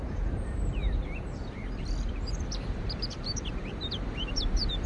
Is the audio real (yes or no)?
no